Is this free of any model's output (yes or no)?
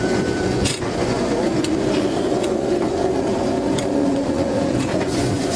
no